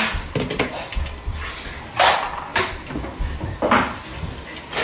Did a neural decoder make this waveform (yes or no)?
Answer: no